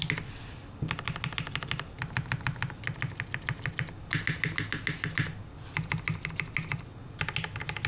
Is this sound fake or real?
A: real